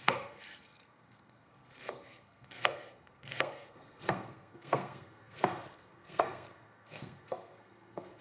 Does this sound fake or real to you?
fake